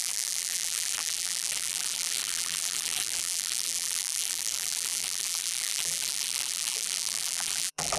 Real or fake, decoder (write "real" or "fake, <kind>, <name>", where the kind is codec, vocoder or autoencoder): fake, vocoder, BigVGAN v2